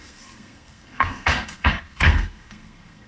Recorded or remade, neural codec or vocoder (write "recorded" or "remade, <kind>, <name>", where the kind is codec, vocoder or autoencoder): remade, codec, SNAC